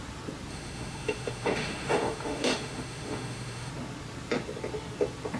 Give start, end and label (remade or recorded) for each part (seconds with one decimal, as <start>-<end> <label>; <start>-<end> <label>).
0.0-0.5 recorded; 0.5-3.7 remade; 3.7-5.4 recorded